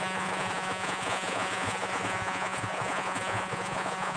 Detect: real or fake fake